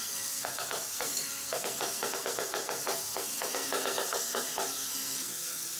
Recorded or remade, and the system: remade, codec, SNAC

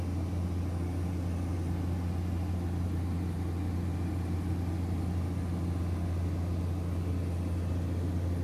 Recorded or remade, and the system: recorded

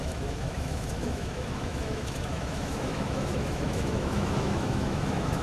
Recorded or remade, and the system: remade, autoencoder, DAC-VAE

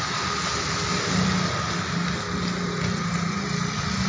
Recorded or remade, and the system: recorded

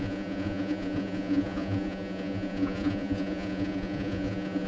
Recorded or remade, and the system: remade, vocoder, Vocos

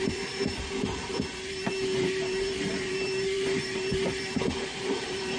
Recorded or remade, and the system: remade, vocoder, BigVGAN v2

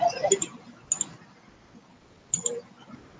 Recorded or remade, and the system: recorded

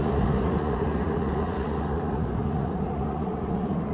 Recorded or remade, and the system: remade, vocoder, Vocos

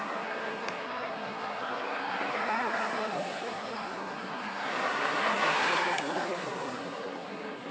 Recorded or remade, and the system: remade, codec, SNAC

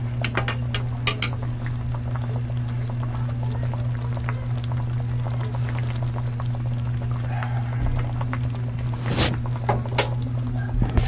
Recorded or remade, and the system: recorded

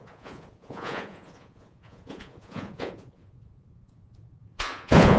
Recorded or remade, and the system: remade, vocoder, Vocos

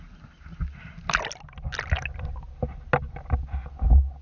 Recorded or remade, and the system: recorded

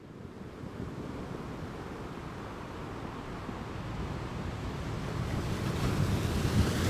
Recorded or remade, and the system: recorded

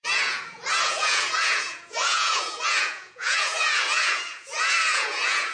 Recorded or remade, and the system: remade, vocoder, Vocos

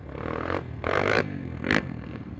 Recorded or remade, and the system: remade, codec, SNAC